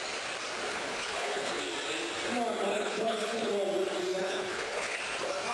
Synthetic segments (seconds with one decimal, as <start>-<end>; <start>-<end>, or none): 0.7-1.6; 2.7-3.5; 4.2-5.0